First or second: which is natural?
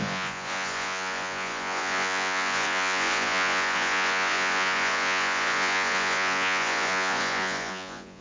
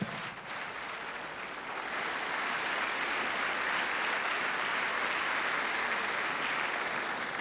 second